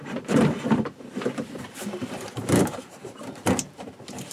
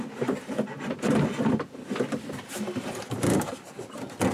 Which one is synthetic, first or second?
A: first